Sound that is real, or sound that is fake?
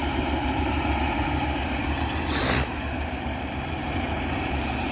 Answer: fake